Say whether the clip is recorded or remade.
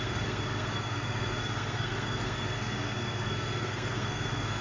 remade